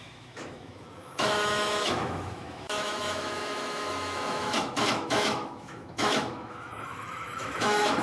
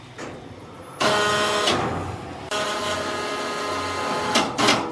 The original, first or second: second